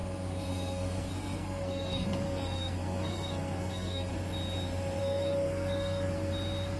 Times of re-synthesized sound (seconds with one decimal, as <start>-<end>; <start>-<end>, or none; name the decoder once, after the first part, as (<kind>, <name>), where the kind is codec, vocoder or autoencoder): 0.0-4.1 (codec, SNAC); 5.0-6.3